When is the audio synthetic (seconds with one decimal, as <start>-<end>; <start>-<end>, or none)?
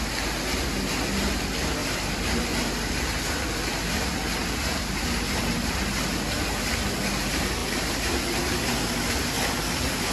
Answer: 1.8-3.3; 4.4-5.4; 7.6-8.2